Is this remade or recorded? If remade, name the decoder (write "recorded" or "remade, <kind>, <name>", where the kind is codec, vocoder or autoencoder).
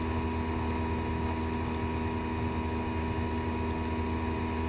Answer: recorded